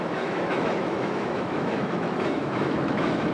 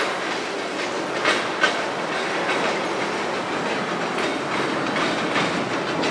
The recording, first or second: second